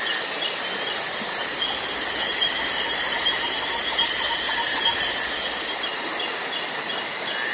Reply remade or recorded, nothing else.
recorded